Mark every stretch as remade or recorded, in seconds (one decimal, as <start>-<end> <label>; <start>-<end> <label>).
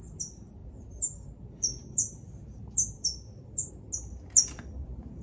0.0-0.6 recorded; 0.6-3.7 remade; 3.7-4.7 recorded; 4.7-5.2 remade